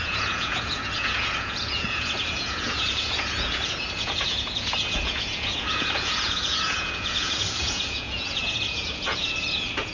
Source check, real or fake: fake